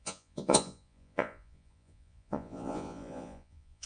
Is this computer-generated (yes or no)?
yes